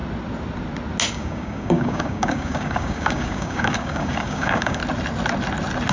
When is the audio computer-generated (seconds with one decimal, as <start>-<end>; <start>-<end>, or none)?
1.1-4.8